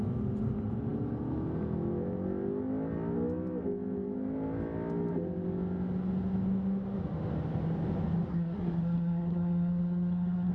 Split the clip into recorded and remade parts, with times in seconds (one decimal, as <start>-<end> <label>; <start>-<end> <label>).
0.0-8.3 recorded; 8.3-10.5 remade